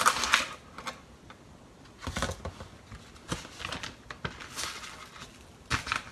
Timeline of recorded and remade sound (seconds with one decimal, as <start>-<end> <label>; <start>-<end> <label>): 0.0-6.1 recorded